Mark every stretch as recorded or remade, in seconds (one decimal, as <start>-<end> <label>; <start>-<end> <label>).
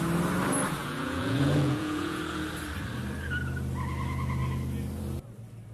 0.0-0.8 recorded; 0.8-2.2 remade; 2.2-5.7 recorded